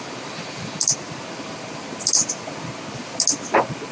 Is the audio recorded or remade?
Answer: recorded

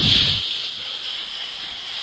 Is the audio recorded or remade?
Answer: recorded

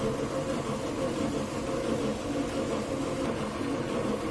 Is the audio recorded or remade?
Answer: recorded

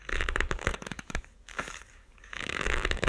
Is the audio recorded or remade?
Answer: remade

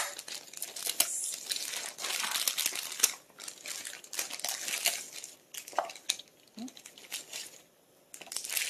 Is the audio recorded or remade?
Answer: recorded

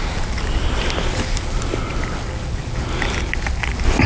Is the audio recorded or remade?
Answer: recorded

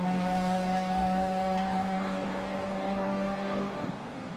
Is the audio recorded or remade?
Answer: remade